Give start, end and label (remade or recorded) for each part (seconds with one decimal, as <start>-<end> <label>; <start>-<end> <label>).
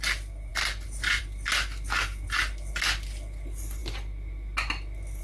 0.0-5.2 recorded